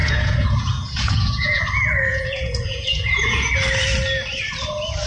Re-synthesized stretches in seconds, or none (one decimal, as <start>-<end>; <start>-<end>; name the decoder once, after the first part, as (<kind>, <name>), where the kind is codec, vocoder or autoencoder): 0.0-1.6 (vocoder, Vocos); 2.1-3.5